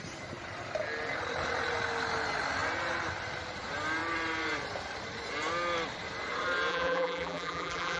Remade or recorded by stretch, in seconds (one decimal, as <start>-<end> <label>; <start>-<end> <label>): 0.0-6.7 recorded; 6.7-8.0 remade